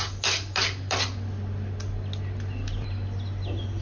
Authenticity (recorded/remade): recorded